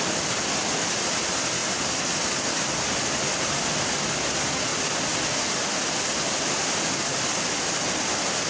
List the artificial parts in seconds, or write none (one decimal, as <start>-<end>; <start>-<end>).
none